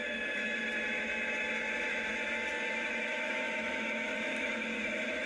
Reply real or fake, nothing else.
fake